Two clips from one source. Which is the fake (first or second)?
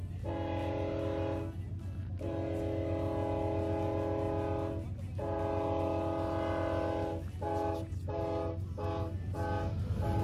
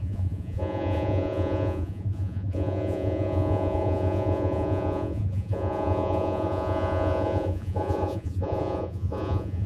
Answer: second